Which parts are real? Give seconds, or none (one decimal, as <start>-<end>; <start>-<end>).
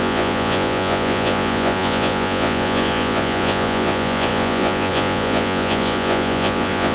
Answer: none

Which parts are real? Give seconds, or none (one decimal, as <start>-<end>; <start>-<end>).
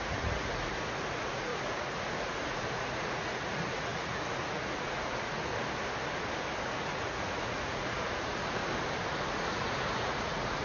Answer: 5.5-6.6; 8.6-9.1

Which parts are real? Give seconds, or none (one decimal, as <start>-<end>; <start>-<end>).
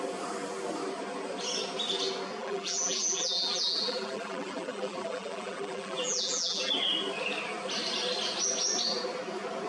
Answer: 0.0-2.4; 6.7-9.7